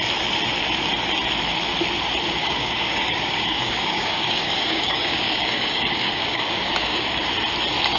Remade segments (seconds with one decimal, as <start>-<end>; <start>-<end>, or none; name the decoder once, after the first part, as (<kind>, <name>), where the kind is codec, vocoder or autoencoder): 2.4-7.2 (codec, DAC)